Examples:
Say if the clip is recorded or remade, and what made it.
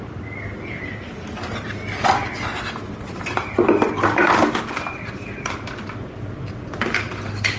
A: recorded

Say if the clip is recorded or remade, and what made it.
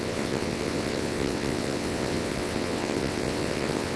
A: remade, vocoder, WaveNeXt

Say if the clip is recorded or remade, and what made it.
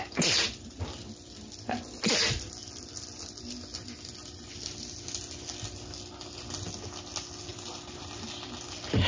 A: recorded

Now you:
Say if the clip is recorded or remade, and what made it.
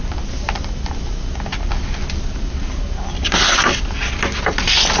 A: recorded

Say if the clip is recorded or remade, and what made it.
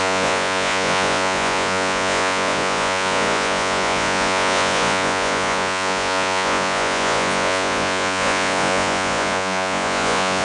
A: remade, vocoder, Vocos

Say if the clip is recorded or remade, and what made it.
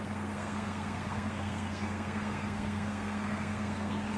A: remade, codec, SNAC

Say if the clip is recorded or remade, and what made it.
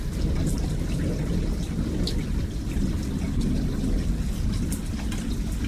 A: recorded